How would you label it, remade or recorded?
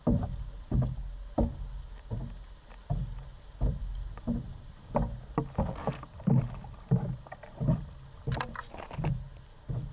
recorded